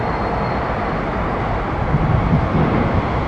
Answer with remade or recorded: recorded